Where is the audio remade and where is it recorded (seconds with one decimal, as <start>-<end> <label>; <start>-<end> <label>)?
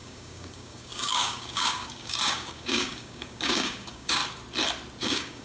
0.0-4.2 remade; 4.2-5.0 recorded; 5.0-5.4 remade